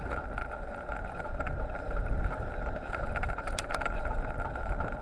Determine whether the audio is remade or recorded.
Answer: recorded